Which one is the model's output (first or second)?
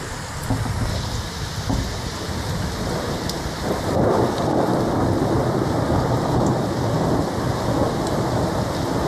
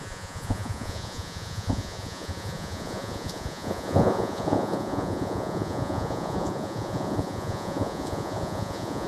second